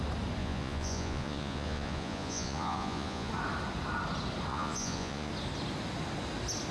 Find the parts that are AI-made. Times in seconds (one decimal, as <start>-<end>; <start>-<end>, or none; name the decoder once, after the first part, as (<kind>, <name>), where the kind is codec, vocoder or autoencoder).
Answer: 0.4-3.3 (vocoder, Vocos); 4.5-5.3